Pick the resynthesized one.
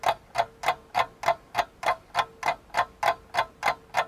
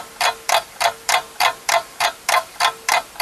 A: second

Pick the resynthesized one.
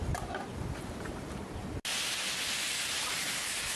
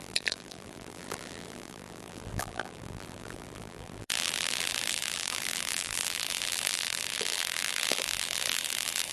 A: second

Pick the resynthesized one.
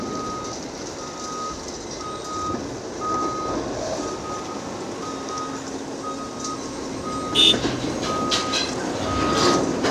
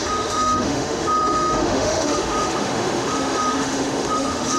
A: second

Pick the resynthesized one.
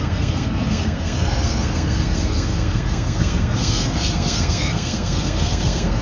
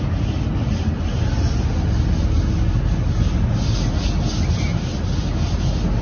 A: first